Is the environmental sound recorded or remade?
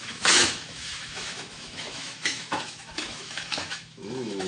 remade